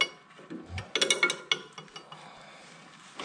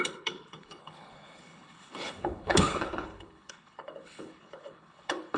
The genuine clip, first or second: first